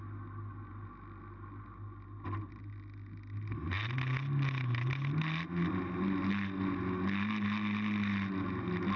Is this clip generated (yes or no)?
no